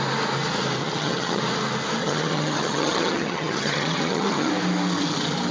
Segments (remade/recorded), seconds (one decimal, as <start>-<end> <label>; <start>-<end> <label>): 0.0-0.8 recorded; 0.8-1.4 remade; 1.4-2.0 recorded; 2.0-4.5 remade; 4.5-5.5 recorded